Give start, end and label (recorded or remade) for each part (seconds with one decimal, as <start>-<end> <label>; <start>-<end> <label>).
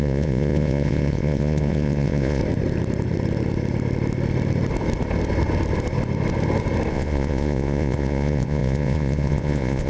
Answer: 0.0-2.4 remade; 2.4-6.9 recorded; 6.9-9.9 remade